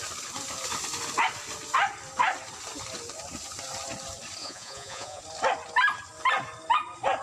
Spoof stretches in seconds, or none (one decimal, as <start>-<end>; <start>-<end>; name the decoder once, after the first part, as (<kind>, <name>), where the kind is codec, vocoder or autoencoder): 4.4-5.2 (vocoder, Vocos)